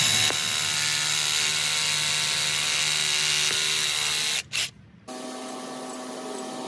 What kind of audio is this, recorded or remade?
recorded